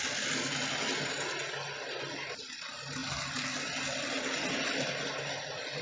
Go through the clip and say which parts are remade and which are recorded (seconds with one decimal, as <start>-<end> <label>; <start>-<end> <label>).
0.0-5.8 recorded